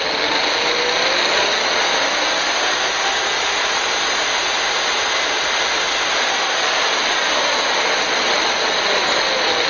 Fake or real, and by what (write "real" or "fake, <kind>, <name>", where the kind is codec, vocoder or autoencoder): real